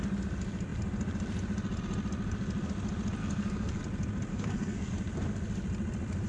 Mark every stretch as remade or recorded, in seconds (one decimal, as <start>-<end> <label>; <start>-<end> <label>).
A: 0.0-3.2 recorded; 3.2-3.8 remade; 3.8-4.3 recorded; 4.3-4.9 remade; 4.9-6.3 recorded